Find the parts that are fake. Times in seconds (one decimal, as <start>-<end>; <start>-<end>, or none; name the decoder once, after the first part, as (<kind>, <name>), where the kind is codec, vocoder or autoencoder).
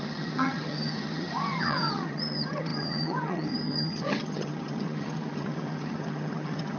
0.0-6.8 (vocoder, HiFi-GAN)